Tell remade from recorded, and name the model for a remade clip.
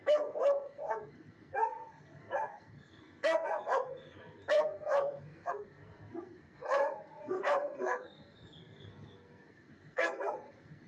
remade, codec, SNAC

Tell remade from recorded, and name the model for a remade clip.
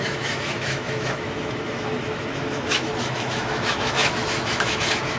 remade, autoencoder, DAC-VAE